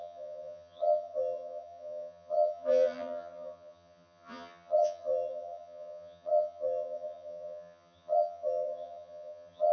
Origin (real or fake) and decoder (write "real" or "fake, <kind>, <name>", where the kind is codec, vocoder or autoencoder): fake, vocoder, HiFi-GAN